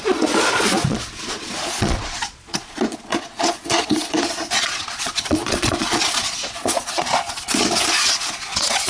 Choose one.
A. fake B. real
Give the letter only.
A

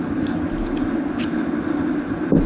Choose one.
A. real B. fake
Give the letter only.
A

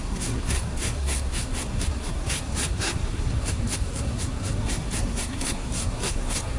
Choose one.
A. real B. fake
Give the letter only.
B